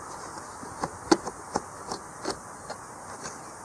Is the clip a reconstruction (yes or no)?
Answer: no